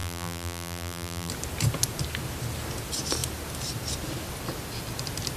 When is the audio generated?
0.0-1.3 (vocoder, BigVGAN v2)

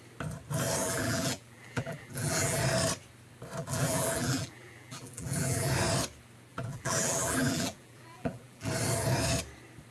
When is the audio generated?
0.8-2.6 (vocoder, BigVGAN v2); 3.6-5.7; 6.5-8.7

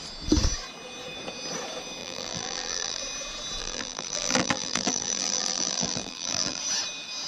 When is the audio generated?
2.0-3.0 (vocoder, BigVGAN v2); 3.6-6.6

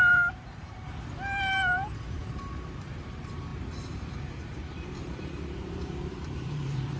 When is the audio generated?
0.0-3.5 (vocoder, BigVGAN v2); 4.2-7.0

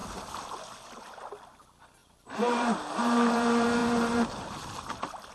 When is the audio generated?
2.0-2.8 (vocoder, BigVGAN v2)